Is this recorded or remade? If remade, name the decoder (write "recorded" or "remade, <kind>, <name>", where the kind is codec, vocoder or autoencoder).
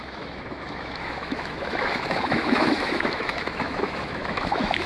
remade, autoencoder, DAC-VAE